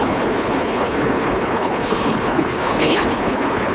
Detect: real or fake fake